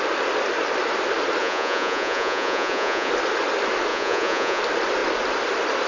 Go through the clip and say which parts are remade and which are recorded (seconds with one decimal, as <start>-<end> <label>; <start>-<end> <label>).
0.0-1.4 recorded; 1.4-3.1 remade; 3.1-3.9 recorded; 3.9-4.6 remade; 4.6-5.9 recorded